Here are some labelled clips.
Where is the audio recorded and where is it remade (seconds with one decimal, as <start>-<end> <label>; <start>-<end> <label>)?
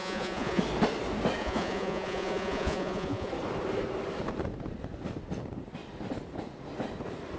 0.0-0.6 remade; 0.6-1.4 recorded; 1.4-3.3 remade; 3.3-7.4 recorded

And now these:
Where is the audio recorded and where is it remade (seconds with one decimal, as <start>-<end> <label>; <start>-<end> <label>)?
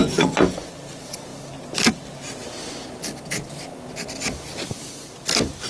0.0-0.7 remade; 0.7-5.7 recorded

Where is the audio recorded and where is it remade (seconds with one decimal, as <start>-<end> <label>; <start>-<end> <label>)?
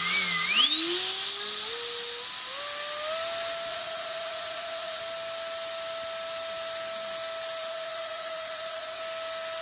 0.0-3.7 recorded; 3.7-5.0 remade; 5.0-7.6 recorded; 7.6-9.0 remade; 9.0-9.6 recorded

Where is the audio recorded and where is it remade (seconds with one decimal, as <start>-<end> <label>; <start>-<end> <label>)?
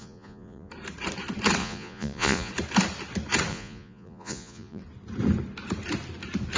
0.0-0.7 remade; 0.7-1.6 recorded; 1.6-2.5 remade; 2.5-3.5 recorded; 3.5-4.8 remade; 4.8-6.6 recorded